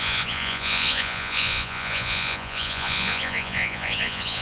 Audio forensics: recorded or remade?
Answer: remade